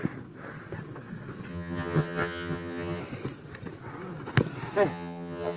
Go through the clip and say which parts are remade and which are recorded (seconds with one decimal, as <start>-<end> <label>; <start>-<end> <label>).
0.0-1.5 recorded; 1.5-3.0 remade; 3.0-4.9 recorded; 4.9-5.6 remade